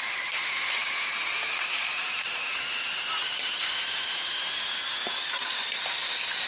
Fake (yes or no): no